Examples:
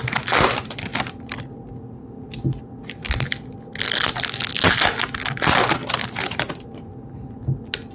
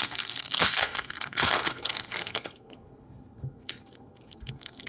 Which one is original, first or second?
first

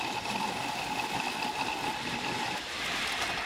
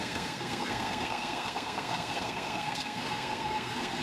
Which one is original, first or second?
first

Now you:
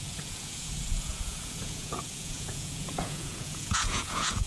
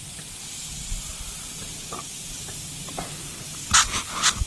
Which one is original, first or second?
second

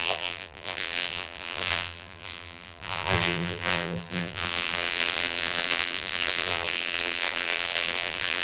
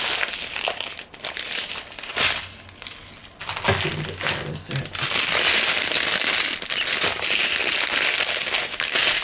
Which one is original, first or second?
second